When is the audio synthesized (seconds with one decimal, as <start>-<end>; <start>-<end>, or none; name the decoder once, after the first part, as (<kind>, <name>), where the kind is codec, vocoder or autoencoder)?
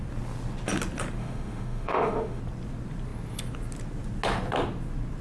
1.2-2.4 (autoencoder, DAC-VAE)